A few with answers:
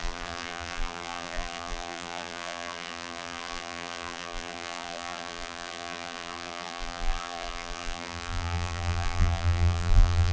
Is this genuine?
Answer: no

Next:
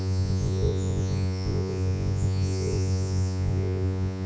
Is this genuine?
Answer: no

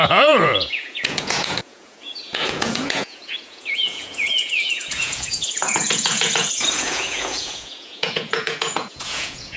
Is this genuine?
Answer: no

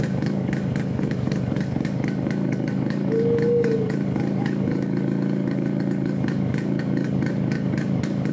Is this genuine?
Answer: no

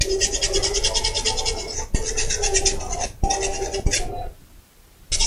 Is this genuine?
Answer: yes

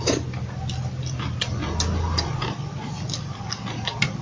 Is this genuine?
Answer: yes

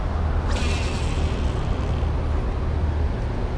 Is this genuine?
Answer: yes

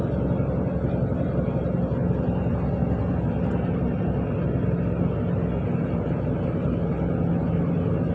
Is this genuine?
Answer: yes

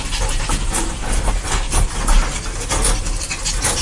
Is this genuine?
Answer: yes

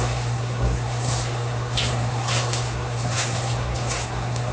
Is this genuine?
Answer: no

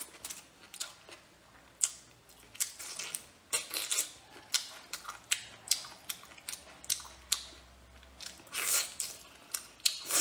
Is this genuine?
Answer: yes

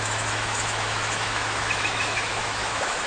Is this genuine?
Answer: no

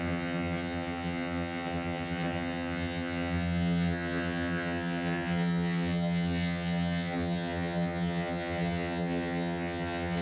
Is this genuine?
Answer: no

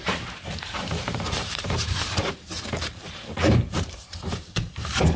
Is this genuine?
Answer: no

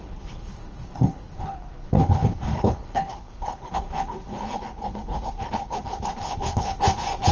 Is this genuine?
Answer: no